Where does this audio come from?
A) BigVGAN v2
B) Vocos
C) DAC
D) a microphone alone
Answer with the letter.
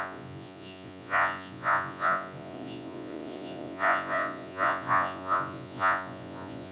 B